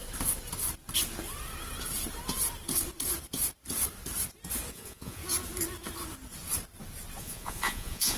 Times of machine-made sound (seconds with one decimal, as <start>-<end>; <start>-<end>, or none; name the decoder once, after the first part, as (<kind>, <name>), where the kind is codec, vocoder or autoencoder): 4.7-5.2 (vocoder, Vocos); 7.2-8.2